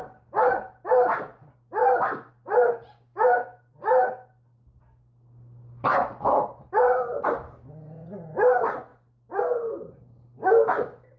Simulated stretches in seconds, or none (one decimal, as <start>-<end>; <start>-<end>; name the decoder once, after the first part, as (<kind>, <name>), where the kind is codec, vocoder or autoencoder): none